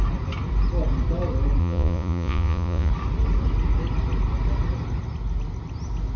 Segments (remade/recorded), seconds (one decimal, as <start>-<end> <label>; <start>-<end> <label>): 0.0-1.6 recorded; 1.6-2.9 remade; 2.9-6.2 recorded